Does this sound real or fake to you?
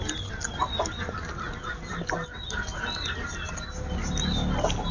real